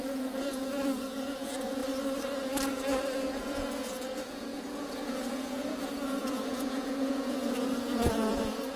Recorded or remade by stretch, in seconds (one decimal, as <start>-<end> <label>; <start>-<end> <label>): 0.0-1.8 remade; 1.8-2.7 recorded; 2.7-8.8 remade

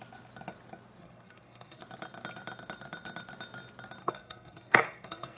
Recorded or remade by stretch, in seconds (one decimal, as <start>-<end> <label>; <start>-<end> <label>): 0.0-1.0 recorded; 1.0-1.8 remade; 1.8-4.0 recorded; 4.0-5.4 remade

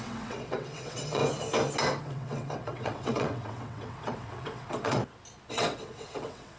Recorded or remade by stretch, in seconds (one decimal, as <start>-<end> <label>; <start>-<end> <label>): 0.0-1.2 remade; 1.2-2.0 recorded; 2.0-5.0 remade; 5.0-5.5 recorded; 5.5-6.6 remade

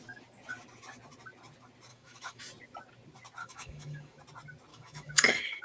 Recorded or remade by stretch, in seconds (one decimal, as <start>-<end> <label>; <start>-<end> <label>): 0.0-1.9 recorded; 1.9-2.4 remade; 2.4-3.4 recorded; 3.4-4.2 remade; 4.2-4.7 recorded; 4.7-5.6 remade

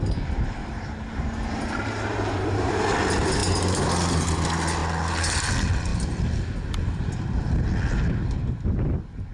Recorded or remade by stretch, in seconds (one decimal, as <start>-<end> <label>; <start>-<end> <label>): 0.0-0.6 recorded; 0.6-2.8 remade; 2.8-9.3 recorded

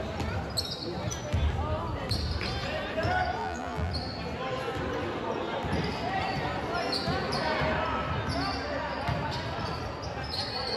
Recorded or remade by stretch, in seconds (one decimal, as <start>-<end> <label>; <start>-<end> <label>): 0.0-3.4 recorded; 3.4-3.9 remade; 3.9-10.8 recorded